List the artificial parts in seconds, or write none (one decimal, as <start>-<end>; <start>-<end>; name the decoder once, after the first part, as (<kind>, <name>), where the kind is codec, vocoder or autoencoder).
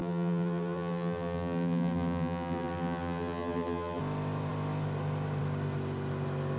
0.0-4.0 (vocoder, BigVGAN v2)